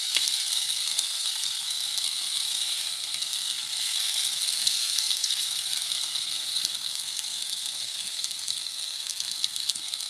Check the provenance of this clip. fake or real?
fake